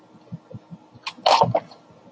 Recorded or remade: recorded